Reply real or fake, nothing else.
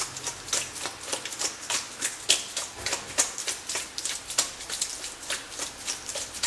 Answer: real